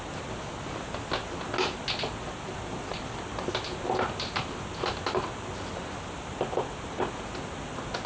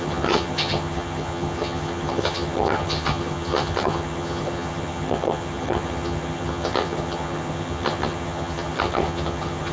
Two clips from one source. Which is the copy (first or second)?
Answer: second